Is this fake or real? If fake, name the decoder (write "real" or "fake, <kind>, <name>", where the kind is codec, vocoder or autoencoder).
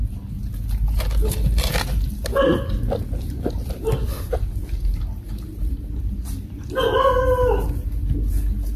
real